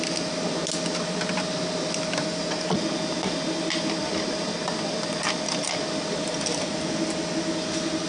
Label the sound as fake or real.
real